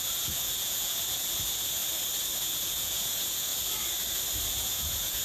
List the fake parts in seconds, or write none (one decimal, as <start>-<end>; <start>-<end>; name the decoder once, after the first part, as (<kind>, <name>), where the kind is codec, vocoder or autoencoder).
0.0-1.8 (vocoder, Vocos); 2.4-3.5; 4.5-5.2

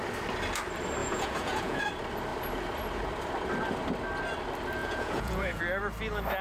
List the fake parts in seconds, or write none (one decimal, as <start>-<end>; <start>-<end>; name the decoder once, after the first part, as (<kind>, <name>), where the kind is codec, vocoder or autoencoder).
1.0-1.8 (vocoder, Vocos); 4.8-5.6

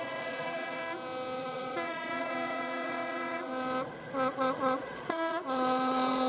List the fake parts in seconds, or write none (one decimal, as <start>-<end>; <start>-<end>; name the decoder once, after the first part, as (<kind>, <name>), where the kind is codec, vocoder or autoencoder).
0.0-0.8 (vocoder, Vocos); 1.4-3.5; 4.3-6.3

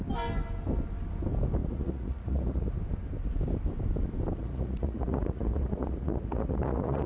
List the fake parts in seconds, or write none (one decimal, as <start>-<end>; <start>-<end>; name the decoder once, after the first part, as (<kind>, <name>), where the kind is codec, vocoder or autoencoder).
1.6-2.7 (vocoder, Vocos); 4.4-7.1

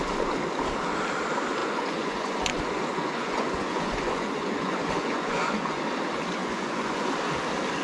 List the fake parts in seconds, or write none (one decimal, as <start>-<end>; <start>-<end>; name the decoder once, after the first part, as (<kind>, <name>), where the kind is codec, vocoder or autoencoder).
1.6-5.8 (vocoder, Vocos); 6.4-7.1

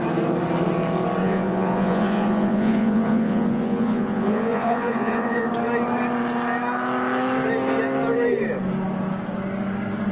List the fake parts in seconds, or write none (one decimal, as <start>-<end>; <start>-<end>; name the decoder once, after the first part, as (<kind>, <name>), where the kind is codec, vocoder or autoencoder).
1.2-5.5 (vocoder, Vocos)